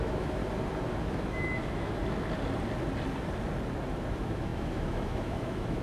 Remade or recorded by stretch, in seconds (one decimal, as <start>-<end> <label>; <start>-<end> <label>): 0.0-0.4 remade; 0.4-1.0 recorded; 1.0-2.0 remade; 2.0-4.1 recorded; 4.1-5.8 remade